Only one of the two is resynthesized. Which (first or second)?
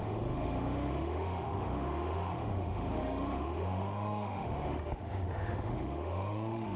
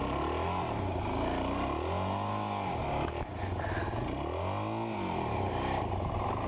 first